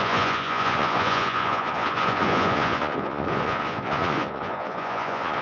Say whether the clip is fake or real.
fake